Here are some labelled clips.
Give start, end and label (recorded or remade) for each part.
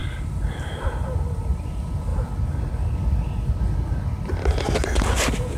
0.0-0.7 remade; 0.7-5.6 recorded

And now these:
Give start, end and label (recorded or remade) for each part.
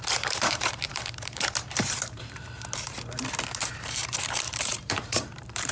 0.0-5.7 remade